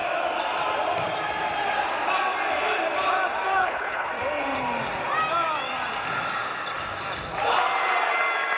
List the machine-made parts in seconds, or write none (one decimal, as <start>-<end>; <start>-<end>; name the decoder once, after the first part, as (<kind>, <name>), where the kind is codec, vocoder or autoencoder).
3.6-4.1 (codec, HILCodec)